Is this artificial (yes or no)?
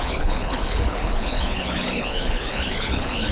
yes